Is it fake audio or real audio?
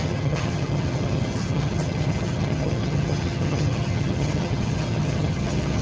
fake